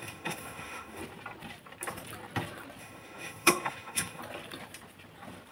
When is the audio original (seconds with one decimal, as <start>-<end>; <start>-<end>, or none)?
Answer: 1.0-2.8; 4.2-5.5